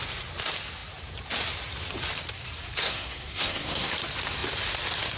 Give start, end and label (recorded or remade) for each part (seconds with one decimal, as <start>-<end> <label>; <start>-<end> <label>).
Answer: 0.0-2.8 recorded; 2.8-3.9 remade; 3.9-5.2 recorded